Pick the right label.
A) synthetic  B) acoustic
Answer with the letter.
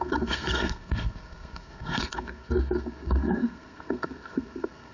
A